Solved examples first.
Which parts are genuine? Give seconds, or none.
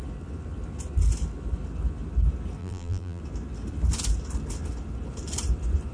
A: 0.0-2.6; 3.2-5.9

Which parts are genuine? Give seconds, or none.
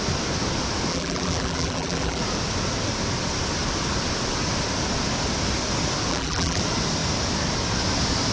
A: 0.0-0.9; 2.2-6.1; 6.6-8.3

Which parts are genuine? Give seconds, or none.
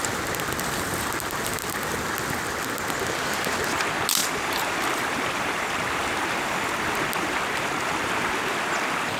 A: 0.0-4.2; 6.9-9.2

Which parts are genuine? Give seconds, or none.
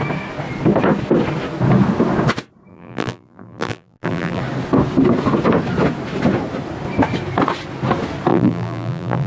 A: 0.0-2.7; 4.4-8.3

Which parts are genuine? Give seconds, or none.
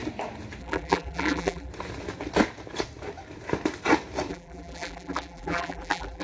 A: 0.0-0.6; 1.7-4.3